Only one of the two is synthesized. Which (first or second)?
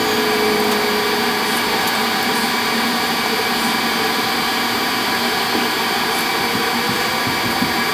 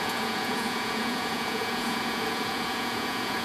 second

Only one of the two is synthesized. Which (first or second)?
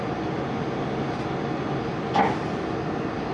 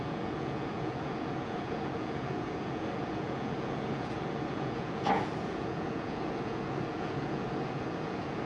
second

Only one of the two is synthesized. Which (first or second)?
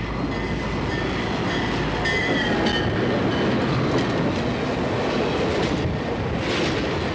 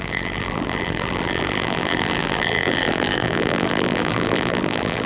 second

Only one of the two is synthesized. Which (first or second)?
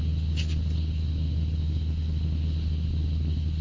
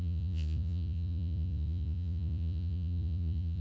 second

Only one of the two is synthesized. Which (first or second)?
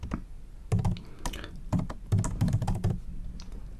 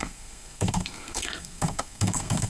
second